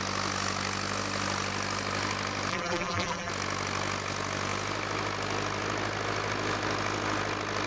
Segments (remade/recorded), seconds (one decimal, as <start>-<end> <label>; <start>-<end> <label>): 0.0-2.5 recorded; 2.5-3.3 remade; 3.3-7.7 recorded